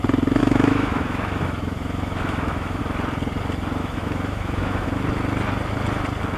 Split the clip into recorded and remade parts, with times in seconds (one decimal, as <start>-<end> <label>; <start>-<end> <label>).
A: 0.0-0.4 recorded; 0.4-2.8 remade; 2.8-3.8 recorded; 3.8-4.9 remade; 4.9-6.4 recorded